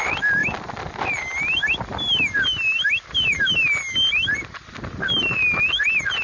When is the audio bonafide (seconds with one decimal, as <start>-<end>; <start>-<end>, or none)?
0.0-6.2